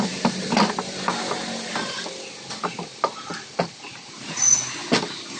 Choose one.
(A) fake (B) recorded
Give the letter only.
B